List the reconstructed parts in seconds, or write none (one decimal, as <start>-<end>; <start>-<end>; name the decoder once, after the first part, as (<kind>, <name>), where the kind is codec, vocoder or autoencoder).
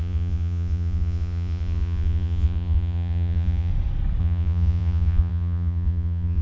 0.0-3.7 (vocoder, Vocos); 4.2-6.4